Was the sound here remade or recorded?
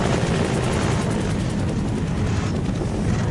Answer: recorded